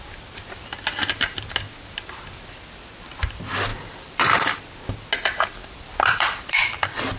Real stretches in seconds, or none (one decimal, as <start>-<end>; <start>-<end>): 0.0-3.7; 4.6-5.6